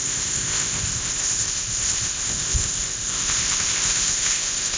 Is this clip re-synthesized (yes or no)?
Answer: yes